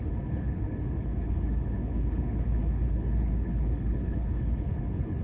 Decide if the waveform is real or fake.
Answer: fake